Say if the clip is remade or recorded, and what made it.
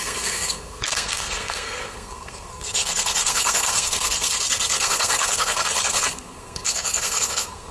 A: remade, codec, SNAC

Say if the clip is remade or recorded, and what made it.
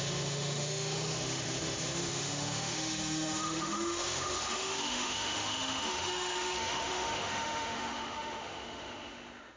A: remade, autoencoder, DAC-VAE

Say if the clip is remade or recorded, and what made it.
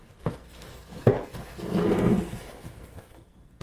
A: remade, codec, SNAC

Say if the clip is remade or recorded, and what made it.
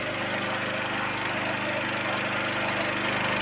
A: recorded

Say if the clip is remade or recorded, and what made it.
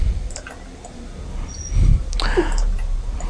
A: recorded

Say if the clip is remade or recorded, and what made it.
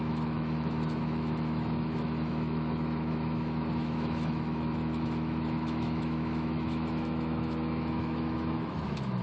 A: remade, autoencoder, DAC-VAE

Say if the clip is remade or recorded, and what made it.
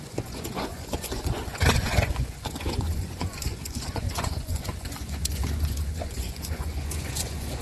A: remade, vocoder, Vocos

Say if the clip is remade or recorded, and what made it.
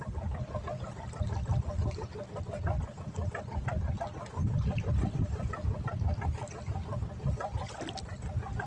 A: recorded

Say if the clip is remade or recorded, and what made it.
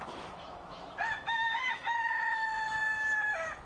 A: remade, autoencoder, DAC-VAE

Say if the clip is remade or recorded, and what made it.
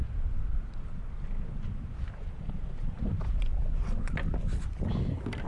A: recorded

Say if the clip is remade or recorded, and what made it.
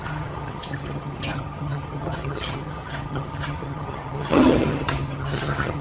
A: remade, vocoder, HiFi-GAN